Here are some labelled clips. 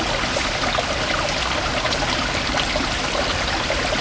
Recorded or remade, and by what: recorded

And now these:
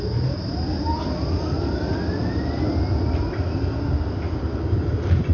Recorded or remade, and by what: recorded